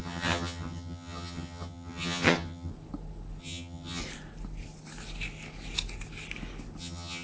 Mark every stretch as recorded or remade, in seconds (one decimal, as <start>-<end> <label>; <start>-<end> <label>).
0.0-2.7 remade; 2.7-3.4 recorded; 3.4-4.0 remade; 4.0-6.8 recorded; 6.8-7.2 remade